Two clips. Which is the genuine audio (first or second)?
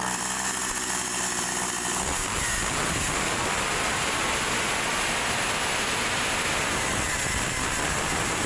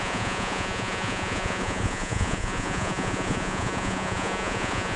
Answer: first